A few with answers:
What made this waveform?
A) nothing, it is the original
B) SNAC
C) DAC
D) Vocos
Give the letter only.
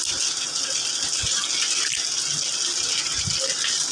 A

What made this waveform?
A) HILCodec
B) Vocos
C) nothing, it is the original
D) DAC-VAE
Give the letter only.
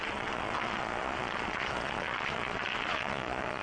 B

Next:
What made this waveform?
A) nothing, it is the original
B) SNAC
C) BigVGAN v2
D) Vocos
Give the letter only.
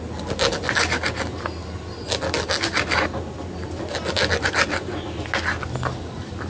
A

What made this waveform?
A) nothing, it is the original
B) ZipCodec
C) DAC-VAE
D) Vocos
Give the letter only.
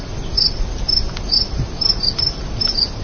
A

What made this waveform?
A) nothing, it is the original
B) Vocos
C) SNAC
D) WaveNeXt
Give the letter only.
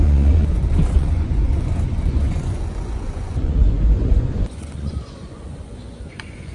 B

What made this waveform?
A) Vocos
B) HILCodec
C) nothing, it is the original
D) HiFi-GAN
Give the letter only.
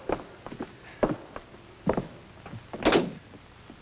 C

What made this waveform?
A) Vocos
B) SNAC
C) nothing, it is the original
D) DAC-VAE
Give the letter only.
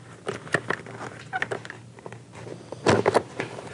C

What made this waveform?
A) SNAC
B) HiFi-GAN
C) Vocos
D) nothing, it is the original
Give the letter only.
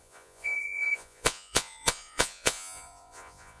C